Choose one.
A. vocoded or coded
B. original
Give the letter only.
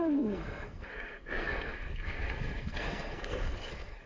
A